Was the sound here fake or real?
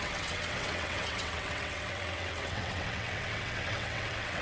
fake